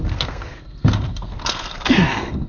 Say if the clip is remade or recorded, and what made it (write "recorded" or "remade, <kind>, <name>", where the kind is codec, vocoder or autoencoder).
remade, codec, SNAC